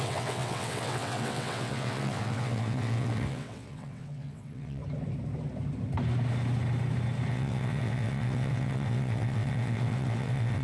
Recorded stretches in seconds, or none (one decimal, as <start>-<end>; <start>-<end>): 4.8-7.3